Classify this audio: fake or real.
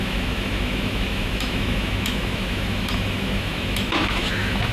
fake